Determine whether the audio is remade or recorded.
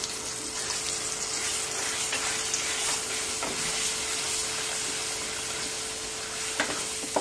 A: recorded